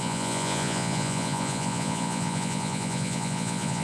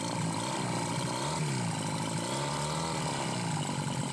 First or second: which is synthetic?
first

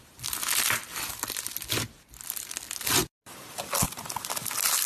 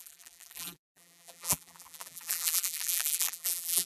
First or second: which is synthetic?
second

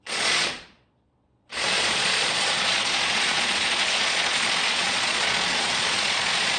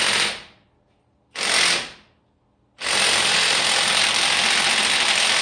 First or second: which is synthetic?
first